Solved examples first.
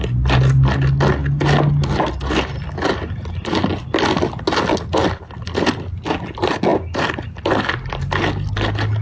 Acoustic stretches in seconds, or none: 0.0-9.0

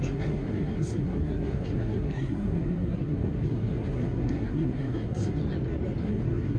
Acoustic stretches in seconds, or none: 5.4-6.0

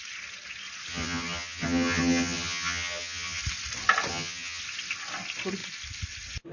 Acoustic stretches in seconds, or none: 0.0-0.9; 3.4-4.1; 4.6-6.5

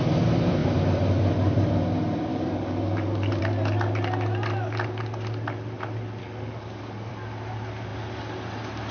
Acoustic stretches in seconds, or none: 0.0-2.3; 3.4-6.2; 7.1-8.9

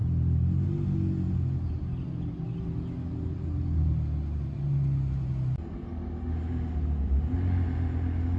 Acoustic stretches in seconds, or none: 0.0-8.4

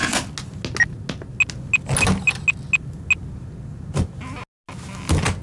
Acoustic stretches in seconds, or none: 0.0-5.4

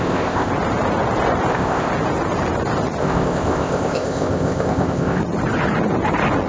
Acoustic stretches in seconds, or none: 0.5-1.5; 1.9-3.0; 5.2-6.5